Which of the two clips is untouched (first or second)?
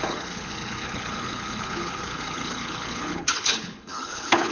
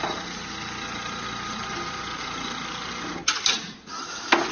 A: second